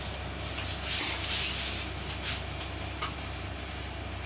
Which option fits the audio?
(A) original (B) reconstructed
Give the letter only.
A